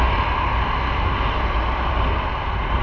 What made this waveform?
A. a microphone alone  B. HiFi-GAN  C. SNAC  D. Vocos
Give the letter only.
A